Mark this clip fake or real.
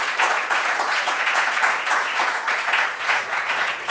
fake